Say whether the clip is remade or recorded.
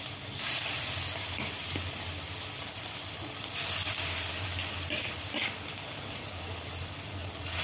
recorded